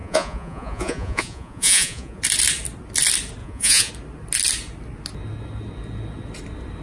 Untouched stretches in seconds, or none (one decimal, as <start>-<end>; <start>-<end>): 2.2-3.4; 3.9-6.8